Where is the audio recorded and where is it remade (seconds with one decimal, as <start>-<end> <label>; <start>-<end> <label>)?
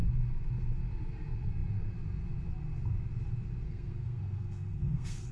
0.0-3.6 recorded; 3.6-5.3 remade